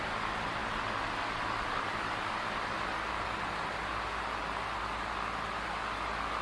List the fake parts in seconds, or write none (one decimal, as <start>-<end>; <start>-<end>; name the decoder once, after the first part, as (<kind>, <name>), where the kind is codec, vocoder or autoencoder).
none